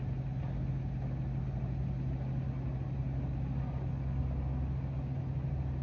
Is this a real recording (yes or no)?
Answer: yes